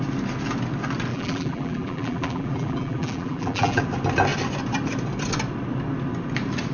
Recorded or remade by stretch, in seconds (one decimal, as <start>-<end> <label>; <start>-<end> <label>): 0.0-1.1 recorded; 1.1-3.8 remade; 3.8-6.7 recorded